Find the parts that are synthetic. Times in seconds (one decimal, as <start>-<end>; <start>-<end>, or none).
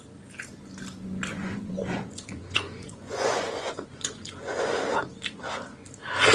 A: 1.3-4.8